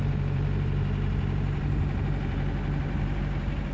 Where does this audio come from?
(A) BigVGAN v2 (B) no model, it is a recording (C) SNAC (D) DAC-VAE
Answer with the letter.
A